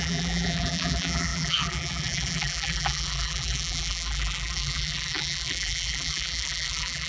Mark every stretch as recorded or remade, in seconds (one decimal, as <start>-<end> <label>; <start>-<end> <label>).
0.0-7.1 remade